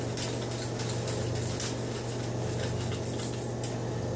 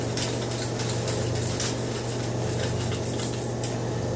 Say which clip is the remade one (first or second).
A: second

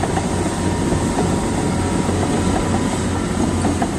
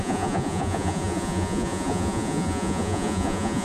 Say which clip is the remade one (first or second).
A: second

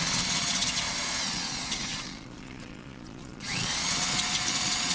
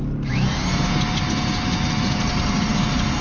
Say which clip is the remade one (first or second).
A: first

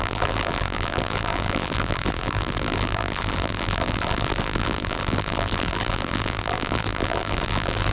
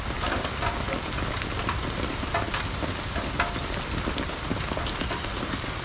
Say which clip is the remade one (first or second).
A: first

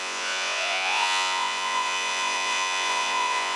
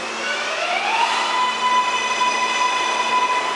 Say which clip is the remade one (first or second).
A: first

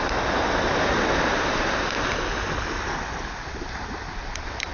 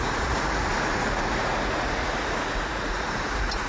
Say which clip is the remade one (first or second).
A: second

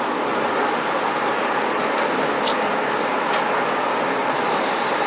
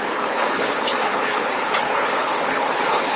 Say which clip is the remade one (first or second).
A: second